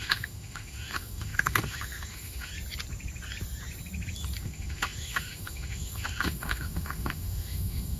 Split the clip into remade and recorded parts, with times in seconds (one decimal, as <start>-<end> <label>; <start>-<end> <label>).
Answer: 0.0-2.5 remade; 2.5-4.4 recorded; 4.4-8.0 remade